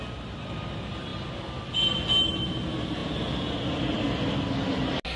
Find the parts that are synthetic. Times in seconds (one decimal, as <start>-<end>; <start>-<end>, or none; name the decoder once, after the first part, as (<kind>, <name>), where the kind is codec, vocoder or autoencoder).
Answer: none

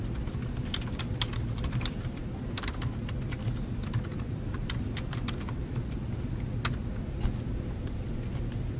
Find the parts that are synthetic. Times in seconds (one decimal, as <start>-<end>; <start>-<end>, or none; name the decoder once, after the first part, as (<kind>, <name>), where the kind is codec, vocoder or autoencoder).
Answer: none

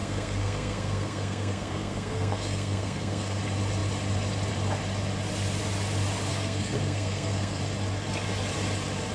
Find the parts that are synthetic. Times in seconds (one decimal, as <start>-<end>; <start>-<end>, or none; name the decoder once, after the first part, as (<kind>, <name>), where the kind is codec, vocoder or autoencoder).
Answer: 0.0-3.4 (codec, SNAC); 6.3-7.6

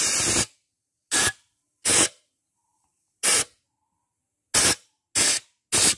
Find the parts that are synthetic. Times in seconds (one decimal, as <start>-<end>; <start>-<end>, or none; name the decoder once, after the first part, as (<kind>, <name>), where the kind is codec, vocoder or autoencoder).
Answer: none

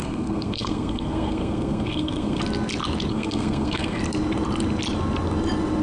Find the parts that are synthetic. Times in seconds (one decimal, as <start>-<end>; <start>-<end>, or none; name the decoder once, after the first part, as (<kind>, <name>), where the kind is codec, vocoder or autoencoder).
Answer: 0.0-2.4 (codec, SNAC); 3.1-4.0